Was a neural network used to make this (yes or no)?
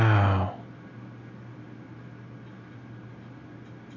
no